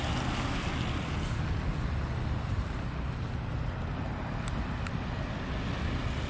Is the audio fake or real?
real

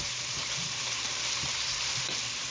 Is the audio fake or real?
fake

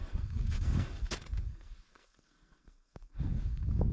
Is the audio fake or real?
fake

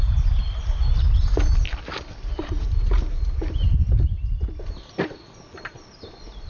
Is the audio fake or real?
real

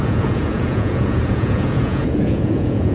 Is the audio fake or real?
fake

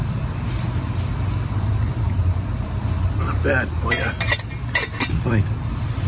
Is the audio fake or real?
fake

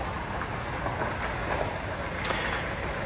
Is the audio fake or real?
real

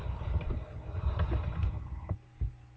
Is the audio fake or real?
real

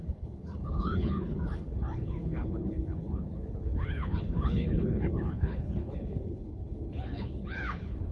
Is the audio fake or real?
fake